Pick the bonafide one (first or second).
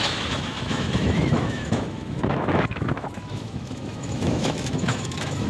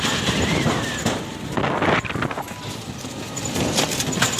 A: second